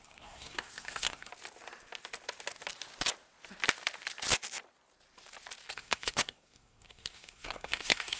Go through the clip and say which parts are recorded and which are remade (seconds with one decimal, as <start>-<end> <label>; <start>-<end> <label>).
0.0-1.3 remade; 1.3-5.7 recorded; 5.7-8.2 remade